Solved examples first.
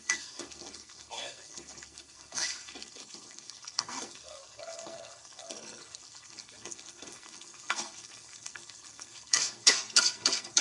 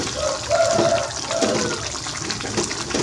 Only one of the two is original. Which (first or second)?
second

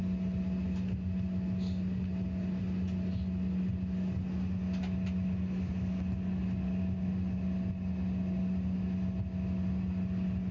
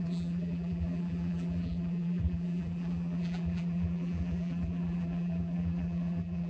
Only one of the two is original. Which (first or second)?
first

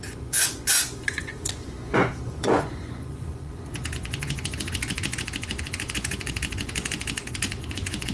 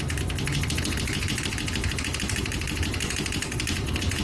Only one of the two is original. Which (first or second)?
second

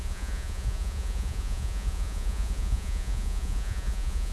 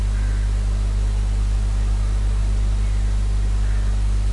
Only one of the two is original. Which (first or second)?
second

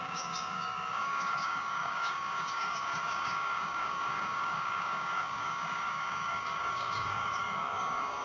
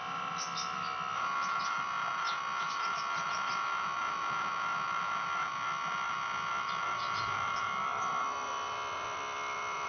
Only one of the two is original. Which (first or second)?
second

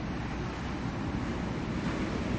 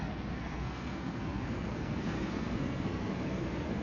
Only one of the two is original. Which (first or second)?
first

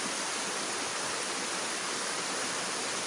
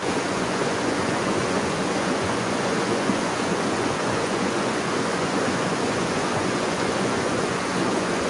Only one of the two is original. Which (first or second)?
first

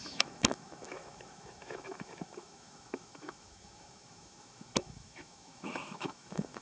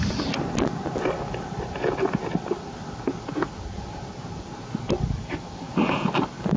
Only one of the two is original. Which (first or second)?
second